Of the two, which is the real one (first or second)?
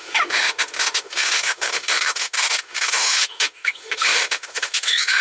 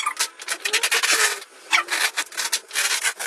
second